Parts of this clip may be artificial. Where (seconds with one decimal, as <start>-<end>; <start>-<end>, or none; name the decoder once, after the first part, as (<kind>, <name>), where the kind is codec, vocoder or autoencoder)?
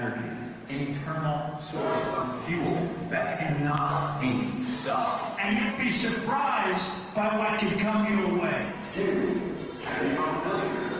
2.2-5.7 (codec, SNAC)